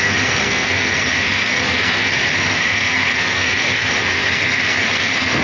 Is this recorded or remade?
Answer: remade